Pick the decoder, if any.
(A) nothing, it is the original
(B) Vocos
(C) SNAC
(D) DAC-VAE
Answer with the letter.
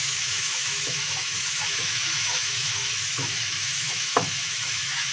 D